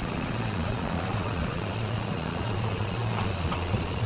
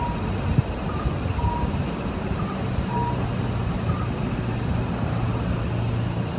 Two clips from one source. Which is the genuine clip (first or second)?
second